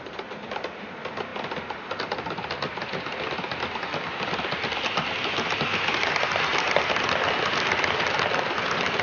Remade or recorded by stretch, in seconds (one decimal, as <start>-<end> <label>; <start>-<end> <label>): 0.0-9.0 recorded